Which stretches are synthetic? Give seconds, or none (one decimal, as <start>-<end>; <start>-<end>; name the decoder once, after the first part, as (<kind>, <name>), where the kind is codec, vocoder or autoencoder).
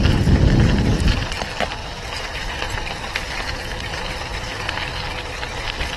1.8-3.6 (vocoder, BigVGAN v2); 4.3-4.8